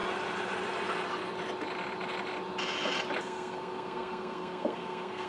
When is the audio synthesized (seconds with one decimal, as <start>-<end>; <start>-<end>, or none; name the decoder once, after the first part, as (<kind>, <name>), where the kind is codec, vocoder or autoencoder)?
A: 3.2-5.3 (codec, SNAC)